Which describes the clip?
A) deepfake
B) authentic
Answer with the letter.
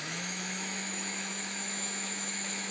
A